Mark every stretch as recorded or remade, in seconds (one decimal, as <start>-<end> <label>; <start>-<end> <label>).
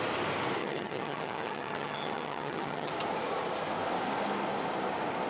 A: 0.0-0.6 recorded; 0.6-2.9 remade; 2.9-5.3 recorded